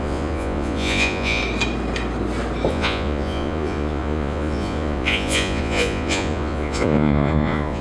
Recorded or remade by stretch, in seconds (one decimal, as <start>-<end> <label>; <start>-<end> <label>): 0.0-1.4 remade; 1.4-2.7 recorded; 2.7-7.8 remade

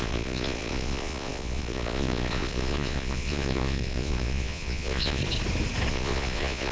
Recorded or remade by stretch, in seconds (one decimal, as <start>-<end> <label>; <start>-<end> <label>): 0.0-5.2 remade; 5.2-5.9 recorded; 5.9-6.7 remade

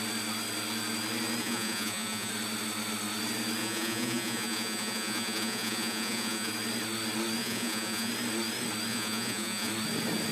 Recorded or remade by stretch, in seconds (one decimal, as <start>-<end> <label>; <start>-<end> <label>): 0.0-1.4 recorded; 1.4-2.3 remade; 2.3-3.6 recorded; 3.6-6.5 remade; 6.5-7.4 recorded; 7.4-8.1 remade; 8.1-8.9 recorded; 8.9-9.7 remade; 9.7-10.3 recorded

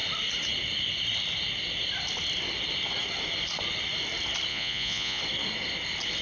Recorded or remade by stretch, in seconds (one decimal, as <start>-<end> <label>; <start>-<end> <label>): 0.0-4.5 recorded; 4.5-5.2 remade; 5.2-6.2 recorded

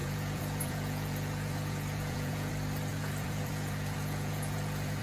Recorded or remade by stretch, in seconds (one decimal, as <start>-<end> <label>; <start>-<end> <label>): 0.0-2.5 remade; 2.5-2.9 recorded; 2.9-5.0 remade

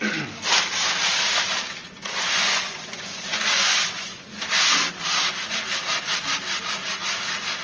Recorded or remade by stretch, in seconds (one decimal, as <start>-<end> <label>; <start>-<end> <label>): 0.0-1.8 recorded; 1.8-4.4 remade; 4.4-7.6 recorded